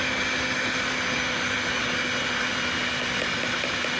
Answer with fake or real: real